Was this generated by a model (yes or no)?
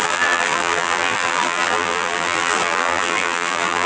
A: yes